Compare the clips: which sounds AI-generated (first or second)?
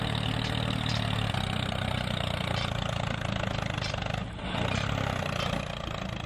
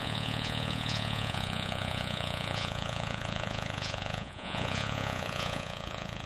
second